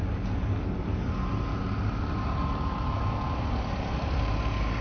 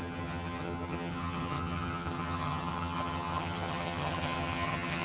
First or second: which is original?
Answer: first